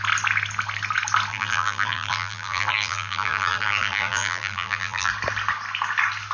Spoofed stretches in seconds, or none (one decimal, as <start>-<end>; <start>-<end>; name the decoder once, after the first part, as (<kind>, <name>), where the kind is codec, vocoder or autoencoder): 1.3-5.1 (vocoder, BigVGAN v2)